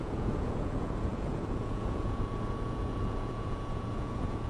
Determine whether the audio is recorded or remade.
remade